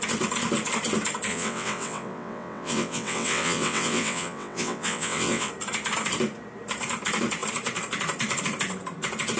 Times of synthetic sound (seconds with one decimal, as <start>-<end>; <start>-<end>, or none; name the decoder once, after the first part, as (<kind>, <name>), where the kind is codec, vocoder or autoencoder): 1.3-5.5 (vocoder, WaveNeXt)